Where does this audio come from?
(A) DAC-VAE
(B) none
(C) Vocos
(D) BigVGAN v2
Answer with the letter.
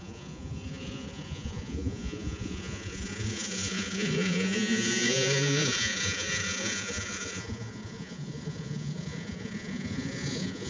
C